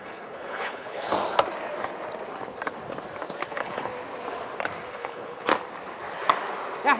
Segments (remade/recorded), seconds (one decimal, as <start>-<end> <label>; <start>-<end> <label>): 0.0-1.1 remade; 1.1-3.5 recorded; 3.5-3.9 remade; 3.9-4.9 recorded; 4.9-5.5 remade; 5.5-7.0 recorded